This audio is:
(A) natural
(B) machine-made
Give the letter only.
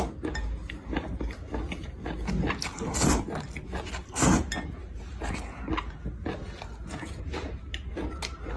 A